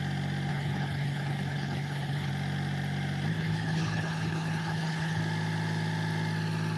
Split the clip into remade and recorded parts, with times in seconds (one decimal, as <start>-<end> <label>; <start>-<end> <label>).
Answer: 0.0-0.5 recorded; 0.5-2.3 remade; 2.3-3.3 recorded; 3.3-5.2 remade; 5.2-6.8 recorded